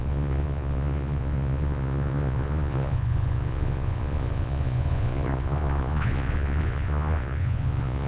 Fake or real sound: fake